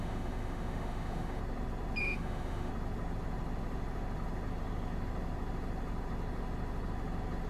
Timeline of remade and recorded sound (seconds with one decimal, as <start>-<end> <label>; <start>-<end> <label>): 0.0-1.4 remade; 1.4-2.0 recorded; 2.0-2.7 remade; 2.7-7.5 recorded